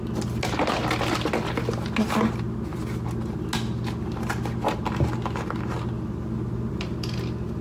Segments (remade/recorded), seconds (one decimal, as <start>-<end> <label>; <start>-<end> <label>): 0.0-7.6 recorded